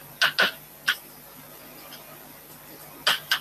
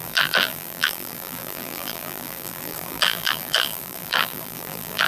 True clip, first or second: first